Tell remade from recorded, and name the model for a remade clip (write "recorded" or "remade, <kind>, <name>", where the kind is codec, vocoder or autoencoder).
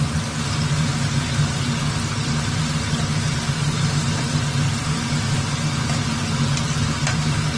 recorded